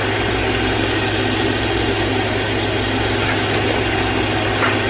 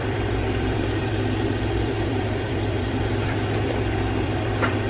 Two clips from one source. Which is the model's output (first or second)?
second